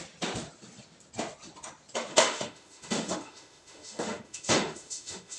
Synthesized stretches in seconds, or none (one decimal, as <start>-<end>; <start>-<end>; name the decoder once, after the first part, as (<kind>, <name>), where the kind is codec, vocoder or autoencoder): 2.1-5.4 (autoencoder, DAC-VAE)

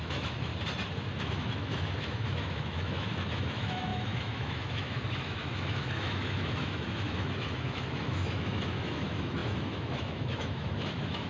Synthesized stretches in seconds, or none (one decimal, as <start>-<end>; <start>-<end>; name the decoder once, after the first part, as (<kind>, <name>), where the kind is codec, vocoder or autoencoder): 0.0-0.5 (autoencoder, DAC-VAE); 1.2-11.3

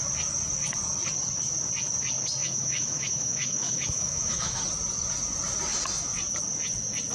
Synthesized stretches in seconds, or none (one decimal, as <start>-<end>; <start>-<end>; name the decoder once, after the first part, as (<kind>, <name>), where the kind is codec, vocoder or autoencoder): 2.4-4.6 (autoencoder, DAC-VAE)

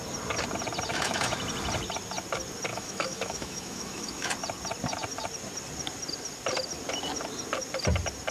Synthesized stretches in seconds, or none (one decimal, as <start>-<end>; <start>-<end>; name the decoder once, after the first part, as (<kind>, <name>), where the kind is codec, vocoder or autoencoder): 0.9-1.4 (autoencoder, DAC-VAE); 2.7-4.3

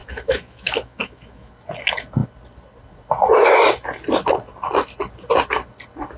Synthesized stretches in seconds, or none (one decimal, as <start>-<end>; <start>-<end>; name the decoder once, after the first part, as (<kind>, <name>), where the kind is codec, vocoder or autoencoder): 0.0-1.5 (autoencoder, DAC-VAE)

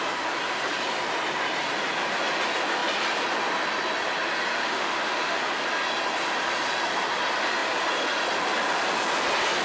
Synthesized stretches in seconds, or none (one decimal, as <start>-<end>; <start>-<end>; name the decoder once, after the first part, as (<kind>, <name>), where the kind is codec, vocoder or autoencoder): 4.6-5.4 (autoencoder, DAC-VAE)